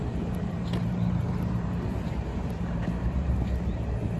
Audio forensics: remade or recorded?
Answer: remade